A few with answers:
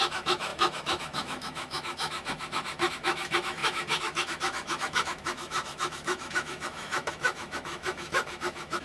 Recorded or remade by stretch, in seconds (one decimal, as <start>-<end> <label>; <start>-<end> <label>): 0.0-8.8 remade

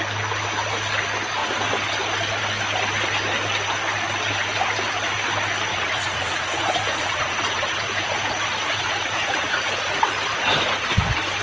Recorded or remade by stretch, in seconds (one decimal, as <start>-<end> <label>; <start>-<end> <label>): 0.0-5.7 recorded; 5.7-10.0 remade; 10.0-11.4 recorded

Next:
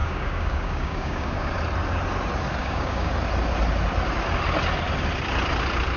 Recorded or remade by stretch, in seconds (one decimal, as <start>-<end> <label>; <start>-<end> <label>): 0.0-1.5 remade; 1.5-2.6 recorded; 2.6-3.1 remade; 3.1-6.0 recorded